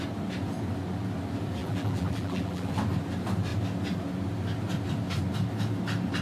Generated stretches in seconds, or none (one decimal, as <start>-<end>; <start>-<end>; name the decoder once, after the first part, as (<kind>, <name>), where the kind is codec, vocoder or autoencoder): 1.6-2.7 (vocoder, BigVGAN v2)